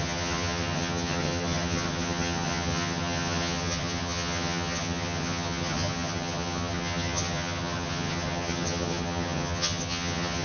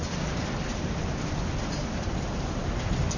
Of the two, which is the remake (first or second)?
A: first